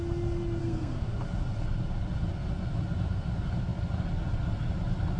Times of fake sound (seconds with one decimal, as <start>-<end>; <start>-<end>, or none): 0.6-1.1